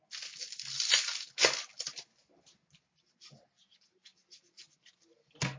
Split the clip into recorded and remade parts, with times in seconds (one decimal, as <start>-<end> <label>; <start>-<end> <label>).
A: 0.0-5.6 recorded